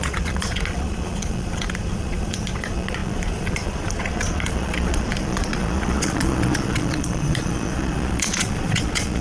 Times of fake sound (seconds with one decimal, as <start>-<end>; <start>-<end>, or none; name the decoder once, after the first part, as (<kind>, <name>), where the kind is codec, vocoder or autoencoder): 0.0-9.2 (vocoder, Vocos)